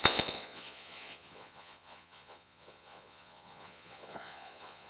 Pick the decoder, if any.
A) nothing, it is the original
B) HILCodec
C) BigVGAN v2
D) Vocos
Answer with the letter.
D